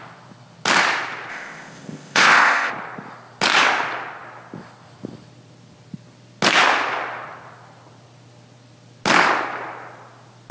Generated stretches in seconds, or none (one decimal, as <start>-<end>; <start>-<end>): 1.3-2.7